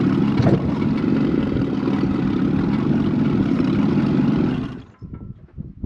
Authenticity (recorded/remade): recorded